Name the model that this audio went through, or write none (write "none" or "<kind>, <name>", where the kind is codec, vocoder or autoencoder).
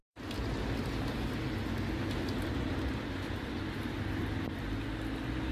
none